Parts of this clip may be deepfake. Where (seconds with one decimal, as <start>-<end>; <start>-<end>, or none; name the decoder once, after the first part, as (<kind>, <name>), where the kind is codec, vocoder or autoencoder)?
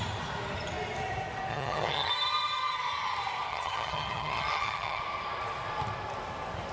1.5-2.1 (vocoder, HiFi-GAN); 3.5-5.0